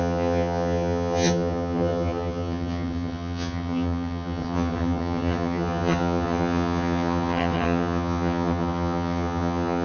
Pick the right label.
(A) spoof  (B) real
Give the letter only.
A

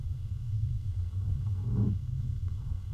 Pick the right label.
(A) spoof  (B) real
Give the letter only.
A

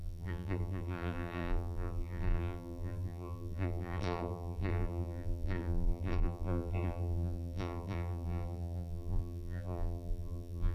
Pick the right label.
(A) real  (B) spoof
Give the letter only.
B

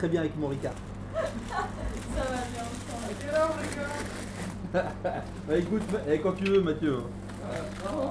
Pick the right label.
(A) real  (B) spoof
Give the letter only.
A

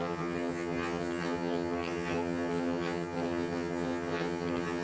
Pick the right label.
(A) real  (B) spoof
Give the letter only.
B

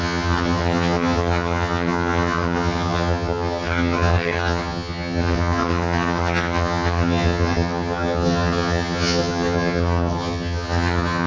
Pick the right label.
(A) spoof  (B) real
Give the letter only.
A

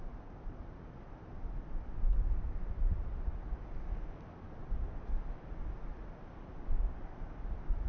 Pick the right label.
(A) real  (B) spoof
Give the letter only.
A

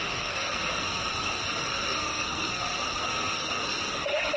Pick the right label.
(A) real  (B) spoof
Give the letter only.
B